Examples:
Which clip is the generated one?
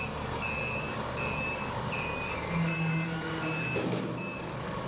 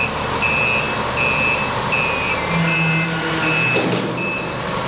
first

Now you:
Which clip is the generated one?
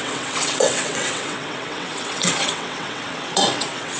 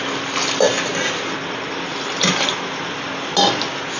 first